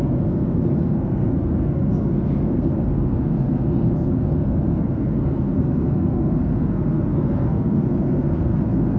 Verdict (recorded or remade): remade